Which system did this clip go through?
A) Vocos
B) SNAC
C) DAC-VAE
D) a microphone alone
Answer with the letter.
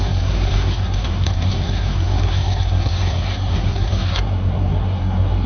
B